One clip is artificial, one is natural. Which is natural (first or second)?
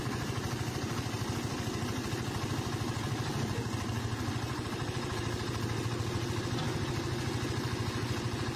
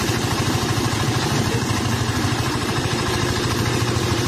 first